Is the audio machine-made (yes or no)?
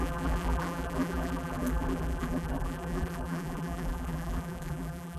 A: yes